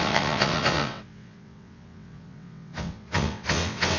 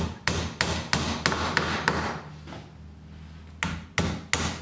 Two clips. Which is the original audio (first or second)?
second